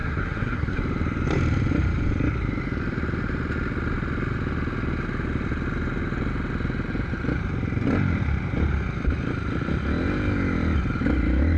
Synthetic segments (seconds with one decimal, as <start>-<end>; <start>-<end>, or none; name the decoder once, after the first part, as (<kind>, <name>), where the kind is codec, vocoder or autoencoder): 0.0-0.8 (codec, SNAC)

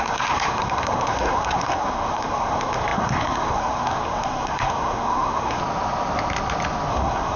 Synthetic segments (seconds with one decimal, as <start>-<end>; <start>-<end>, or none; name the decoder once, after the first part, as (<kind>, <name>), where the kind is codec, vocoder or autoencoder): 0.0-5.6 (codec, SNAC); 6.9-7.4

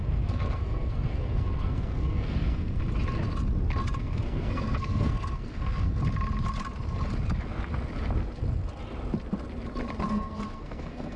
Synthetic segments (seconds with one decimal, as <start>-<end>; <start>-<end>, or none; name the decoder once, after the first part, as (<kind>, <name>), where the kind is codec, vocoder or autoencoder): 0.0-2.8 (codec, SNAC); 4.0-6.0; 10.1-11.2

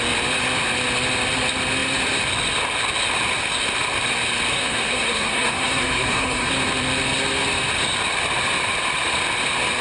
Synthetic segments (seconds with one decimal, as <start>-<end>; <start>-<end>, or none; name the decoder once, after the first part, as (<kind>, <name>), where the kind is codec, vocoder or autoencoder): 4.5-6.5 (codec, SNAC)